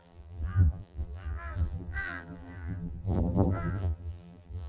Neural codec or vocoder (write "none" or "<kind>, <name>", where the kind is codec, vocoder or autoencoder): vocoder, BigVGAN v2